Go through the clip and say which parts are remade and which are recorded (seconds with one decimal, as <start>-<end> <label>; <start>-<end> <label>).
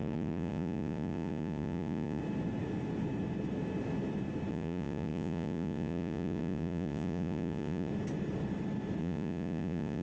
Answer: 0.0-2.2 remade; 2.2-4.5 recorded; 4.5-7.9 remade; 7.9-9.0 recorded; 9.0-10.0 remade